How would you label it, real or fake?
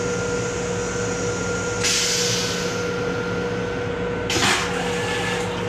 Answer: real